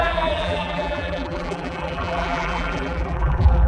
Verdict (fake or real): fake